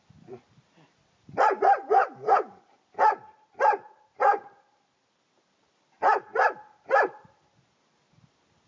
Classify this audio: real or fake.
real